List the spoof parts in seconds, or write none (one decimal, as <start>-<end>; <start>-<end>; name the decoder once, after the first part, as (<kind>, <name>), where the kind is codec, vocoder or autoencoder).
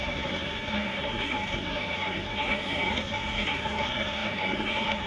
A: 0.0-5.1 (codec, SNAC)